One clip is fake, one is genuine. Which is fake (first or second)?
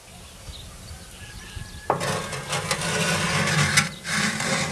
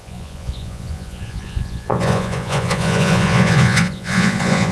second